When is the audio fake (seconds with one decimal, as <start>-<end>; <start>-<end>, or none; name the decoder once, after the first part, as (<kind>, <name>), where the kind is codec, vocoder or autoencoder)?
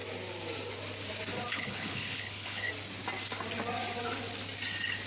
1.5-2.7 (codec, HILCodec)